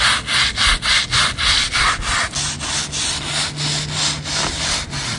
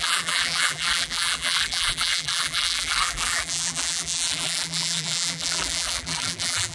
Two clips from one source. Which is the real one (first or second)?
first